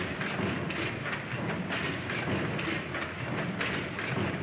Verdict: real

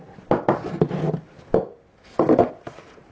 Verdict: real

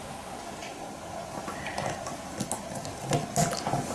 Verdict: real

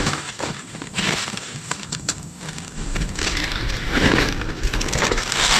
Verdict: fake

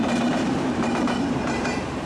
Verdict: fake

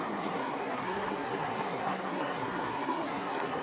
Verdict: fake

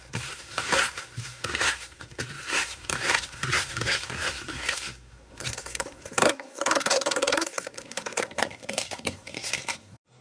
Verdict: fake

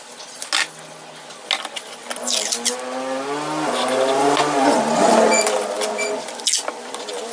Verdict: real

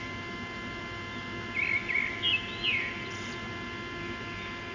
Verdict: real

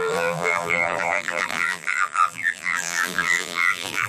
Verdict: fake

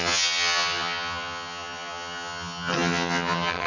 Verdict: fake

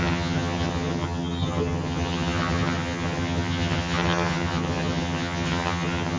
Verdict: fake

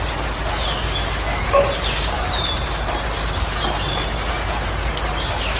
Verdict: real